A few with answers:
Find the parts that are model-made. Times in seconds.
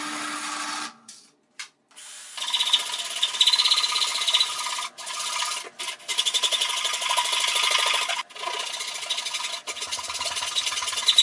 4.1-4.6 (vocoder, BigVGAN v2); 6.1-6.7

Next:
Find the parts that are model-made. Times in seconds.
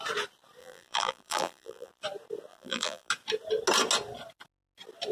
0.6-1.9 (vocoder, BigVGAN v2); 2.5-3.1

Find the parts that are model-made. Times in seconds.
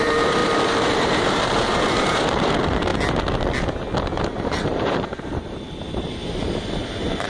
0.0-2.9 (vocoder, BigVGAN v2); 4.2-7.3